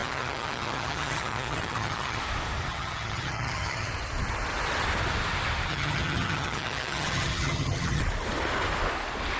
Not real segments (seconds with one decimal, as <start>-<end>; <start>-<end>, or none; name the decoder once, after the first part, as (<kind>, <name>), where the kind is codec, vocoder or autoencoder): 0.0-2.2 (vocoder, HiFi-GAN); 2.7-3.9; 5.7-8.0